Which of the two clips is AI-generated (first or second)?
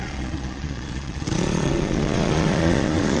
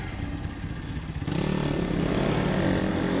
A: first